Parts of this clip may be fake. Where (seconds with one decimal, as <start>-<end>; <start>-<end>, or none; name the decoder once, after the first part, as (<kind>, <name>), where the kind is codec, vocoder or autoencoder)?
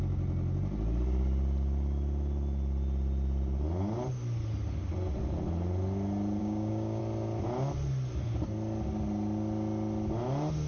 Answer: 6.4-7.0 (codec, DAC)